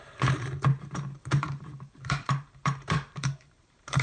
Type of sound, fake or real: fake